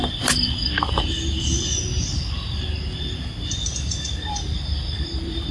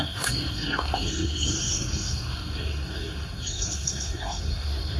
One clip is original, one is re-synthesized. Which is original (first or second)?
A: first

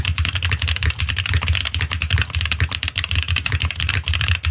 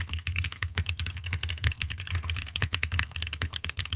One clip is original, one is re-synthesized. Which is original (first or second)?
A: first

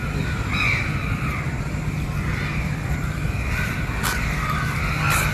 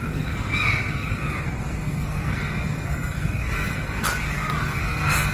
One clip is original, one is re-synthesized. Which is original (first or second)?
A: first